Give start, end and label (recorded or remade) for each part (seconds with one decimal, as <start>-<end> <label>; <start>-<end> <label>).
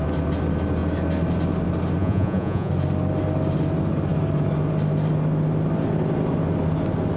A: 0.0-2.0 recorded; 2.0-2.7 remade; 2.7-7.2 recorded